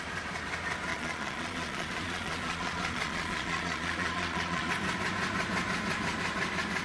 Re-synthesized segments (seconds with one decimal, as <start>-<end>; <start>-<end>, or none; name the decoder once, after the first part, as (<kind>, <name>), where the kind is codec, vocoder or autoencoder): 0.9-4.7 (vocoder, Vocos)